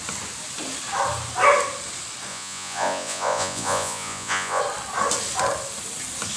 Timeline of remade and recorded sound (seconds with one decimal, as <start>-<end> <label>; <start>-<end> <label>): 0.0-2.3 recorded; 2.3-4.6 remade; 4.6-6.4 recorded